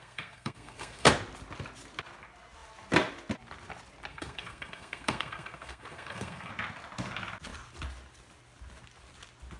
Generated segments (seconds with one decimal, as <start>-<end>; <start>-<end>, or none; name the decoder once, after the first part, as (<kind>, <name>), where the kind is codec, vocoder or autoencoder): 0.0-1.1 (codec, SNAC); 4.1-6.5

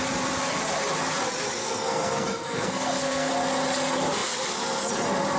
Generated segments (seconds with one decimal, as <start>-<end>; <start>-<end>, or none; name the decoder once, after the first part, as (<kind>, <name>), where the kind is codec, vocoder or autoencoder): 1.6-3.3 (codec, SNAC)

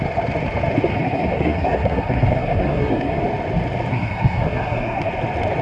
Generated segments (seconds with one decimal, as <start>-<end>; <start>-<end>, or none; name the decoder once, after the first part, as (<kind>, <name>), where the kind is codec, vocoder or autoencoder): 0.9-3.2 (codec, SNAC); 3.9-5.1

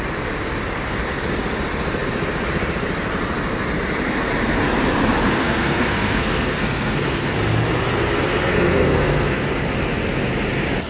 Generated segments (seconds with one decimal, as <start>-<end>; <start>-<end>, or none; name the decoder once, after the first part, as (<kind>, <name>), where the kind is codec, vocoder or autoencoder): 5.4-7.3 (codec, SNAC); 8.4-9.4

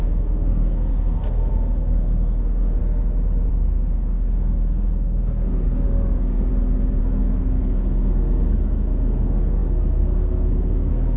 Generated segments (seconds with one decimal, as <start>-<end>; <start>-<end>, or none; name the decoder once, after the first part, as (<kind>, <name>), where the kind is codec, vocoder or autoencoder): 0.0-2.8 (codec, SNAC); 3.5-6.5; 7.0-11.2